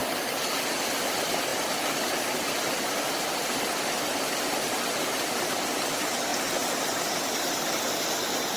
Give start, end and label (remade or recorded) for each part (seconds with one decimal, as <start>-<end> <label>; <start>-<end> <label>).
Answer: 0.0-8.6 recorded